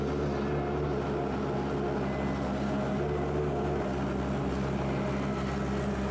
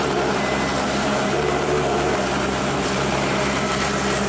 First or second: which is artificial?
second